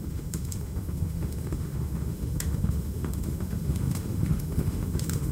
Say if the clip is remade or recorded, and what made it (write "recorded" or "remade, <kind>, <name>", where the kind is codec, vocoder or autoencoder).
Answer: remade, autoencoder, DAC-VAE